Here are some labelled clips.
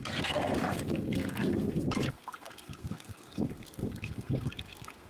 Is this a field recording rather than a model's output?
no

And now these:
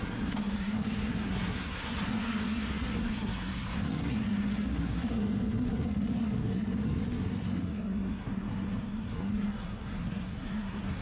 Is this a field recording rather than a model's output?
no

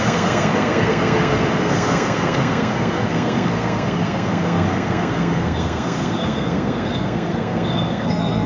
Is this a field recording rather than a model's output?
no